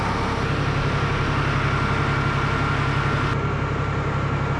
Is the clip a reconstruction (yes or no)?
no